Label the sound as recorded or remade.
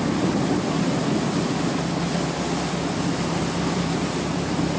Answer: recorded